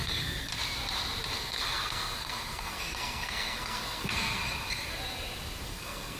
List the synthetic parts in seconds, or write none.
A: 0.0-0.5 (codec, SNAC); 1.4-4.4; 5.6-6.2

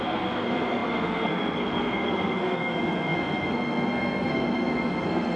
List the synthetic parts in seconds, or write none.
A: 0.0-5.4 (codec, SNAC)

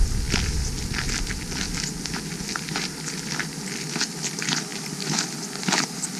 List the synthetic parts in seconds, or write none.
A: none